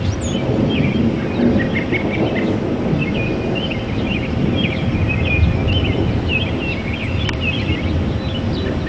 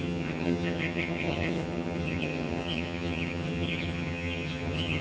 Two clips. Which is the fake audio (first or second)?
second